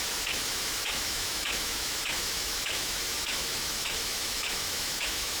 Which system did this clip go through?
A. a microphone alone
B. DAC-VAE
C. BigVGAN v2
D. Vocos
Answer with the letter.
B